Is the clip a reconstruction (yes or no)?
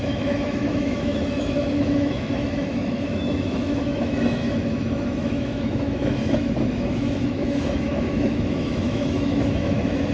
yes